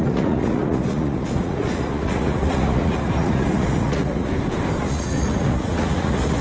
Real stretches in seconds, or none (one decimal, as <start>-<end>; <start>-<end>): 4.3-4.8